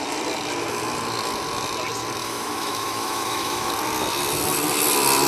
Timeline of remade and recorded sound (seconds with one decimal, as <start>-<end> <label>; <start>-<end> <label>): 0.0-2.2 recorded; 2.2-3.7 remade; 3.7-5.3 recorded